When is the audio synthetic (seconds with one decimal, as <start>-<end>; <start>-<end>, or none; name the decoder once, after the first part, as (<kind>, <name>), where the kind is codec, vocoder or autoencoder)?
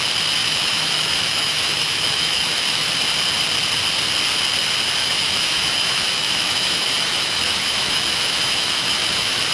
0.4-2.9 (autoencoder, DAC-VAE); 5.0-9.5